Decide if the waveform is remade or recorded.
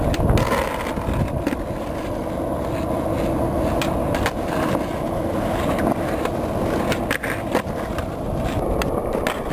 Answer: recorded